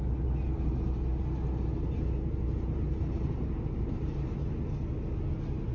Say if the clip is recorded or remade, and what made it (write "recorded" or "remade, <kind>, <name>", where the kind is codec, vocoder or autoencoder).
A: recorded